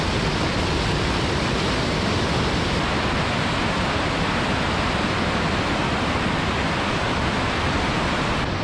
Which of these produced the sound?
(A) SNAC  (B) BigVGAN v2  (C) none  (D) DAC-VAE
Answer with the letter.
C